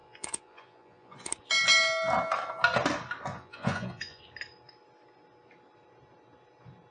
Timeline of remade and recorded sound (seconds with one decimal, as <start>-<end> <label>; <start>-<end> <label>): 0.0-1.3 remade; 1.3-3.3 recorded; 3.3-4.2 remade; 4.2-6.9 recorded